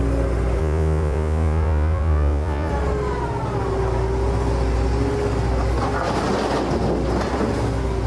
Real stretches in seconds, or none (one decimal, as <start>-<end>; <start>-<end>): 0.0-0.6; 2.7-8.1

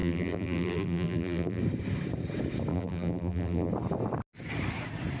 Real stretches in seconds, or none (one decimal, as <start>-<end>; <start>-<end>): 1.6-2.7; 3.7-5.2

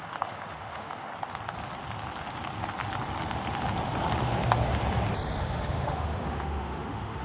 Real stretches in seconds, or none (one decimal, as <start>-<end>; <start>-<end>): 1.1-5.4

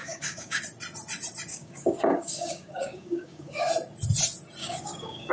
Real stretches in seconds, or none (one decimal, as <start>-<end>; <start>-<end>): 0.6-1.5; 3.7-4.6

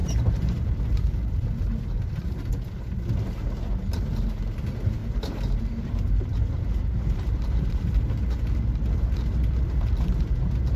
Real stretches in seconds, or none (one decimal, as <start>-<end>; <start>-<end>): 2.5-5.0; 8.0-10.8

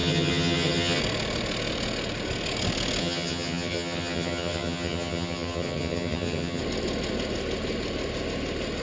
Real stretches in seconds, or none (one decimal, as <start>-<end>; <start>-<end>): 1.0-3.0; 6.6-8.8

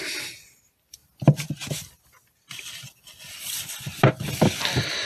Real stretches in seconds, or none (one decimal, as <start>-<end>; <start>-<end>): 0.0-5.1

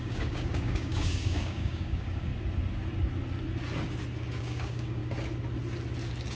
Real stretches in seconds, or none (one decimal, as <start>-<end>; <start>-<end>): 2.3-4.4; 5.0-6.3